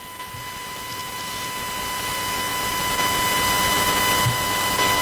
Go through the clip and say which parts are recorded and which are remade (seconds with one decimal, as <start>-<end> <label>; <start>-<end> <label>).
0.0-5.0 recorded

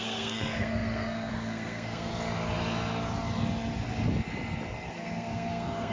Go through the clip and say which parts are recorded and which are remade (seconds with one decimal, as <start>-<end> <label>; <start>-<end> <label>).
0.0-2.1 remade; 2.1-4.9 recorded; 4.9-5.9 remade

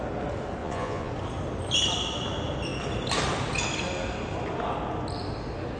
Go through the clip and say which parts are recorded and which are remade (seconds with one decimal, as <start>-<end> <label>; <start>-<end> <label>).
0.0-0.6 recorded; 0.6-1.1 remade; 1.1-5.8 recorded

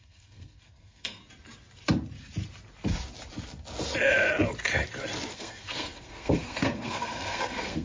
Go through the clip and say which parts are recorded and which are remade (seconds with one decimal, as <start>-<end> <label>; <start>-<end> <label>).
0.0-1.2 remade; 1.2-5.3 recorded; 5.3-7.8 remade

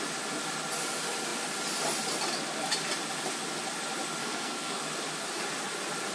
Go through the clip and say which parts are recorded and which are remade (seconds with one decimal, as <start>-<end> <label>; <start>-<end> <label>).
0.0-4.2 recorded; 4.2-4.8 remade; 4.8-6.1 recorded

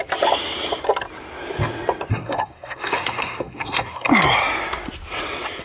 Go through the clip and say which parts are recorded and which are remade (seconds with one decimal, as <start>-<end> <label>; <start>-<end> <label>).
0.0-2.1 recorded; 2.1-4.1 remade; 4.1-5.6 recorded

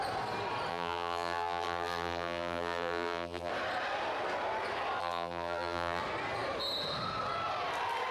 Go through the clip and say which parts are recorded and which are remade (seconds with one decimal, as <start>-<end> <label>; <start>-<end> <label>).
0.0-0.7 recorded; 0.7-3.5 remade; 3.5-5.0 recorded; 5.0-6.0 remade; 6.0-8.1 recorded